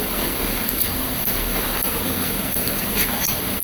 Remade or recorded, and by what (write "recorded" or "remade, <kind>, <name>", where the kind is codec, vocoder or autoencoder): remade, codec, SNAC